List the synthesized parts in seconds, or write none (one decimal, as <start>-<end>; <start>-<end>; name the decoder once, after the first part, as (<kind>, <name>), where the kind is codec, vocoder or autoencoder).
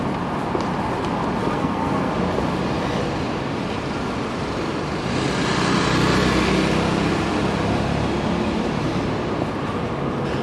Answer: 1.4-2.1 (codec, SNAC)